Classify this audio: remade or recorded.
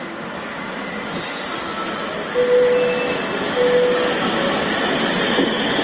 recorded